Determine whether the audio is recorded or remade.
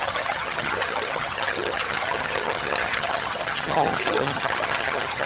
remade